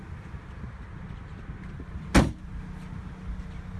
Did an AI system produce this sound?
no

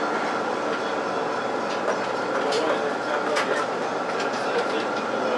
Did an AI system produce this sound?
no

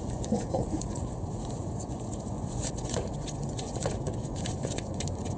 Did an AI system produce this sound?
yes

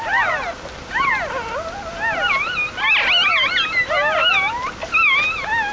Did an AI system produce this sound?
no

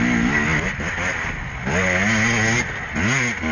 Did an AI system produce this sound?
no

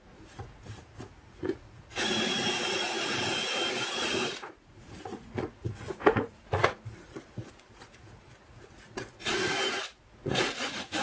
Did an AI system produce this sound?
yes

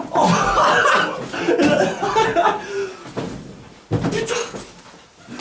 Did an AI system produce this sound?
no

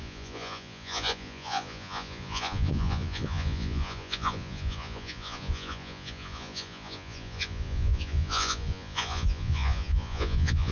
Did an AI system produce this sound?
yes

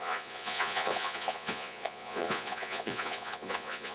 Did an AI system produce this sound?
yes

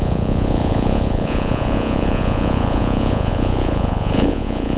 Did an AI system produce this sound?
yes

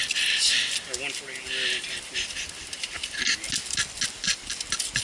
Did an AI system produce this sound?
no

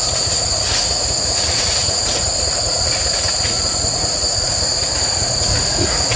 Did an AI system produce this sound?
yes